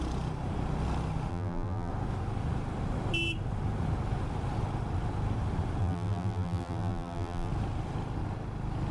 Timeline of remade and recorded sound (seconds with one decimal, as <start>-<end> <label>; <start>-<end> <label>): 0.0-1.3 recorded; 1.3-1.9 remade; 1.9-5.8 recorded; 5.8-7.5 remade; 7.5-8.9 recorded